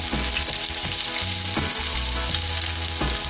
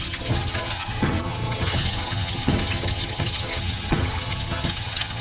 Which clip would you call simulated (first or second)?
second